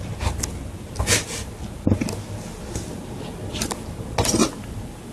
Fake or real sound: real